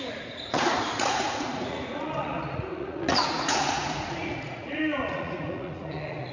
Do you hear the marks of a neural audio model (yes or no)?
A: yes